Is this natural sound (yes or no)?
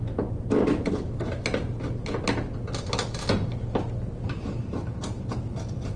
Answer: yes